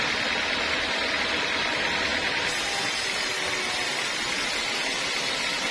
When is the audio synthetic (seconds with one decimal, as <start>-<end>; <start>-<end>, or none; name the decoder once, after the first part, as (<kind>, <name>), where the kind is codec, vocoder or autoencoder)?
none